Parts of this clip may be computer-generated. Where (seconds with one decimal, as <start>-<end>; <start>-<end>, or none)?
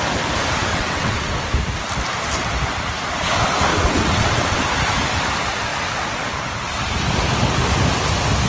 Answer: 0.7-1.3; 3.7-4.6